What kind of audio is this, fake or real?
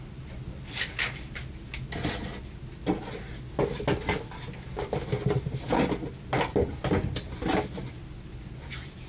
real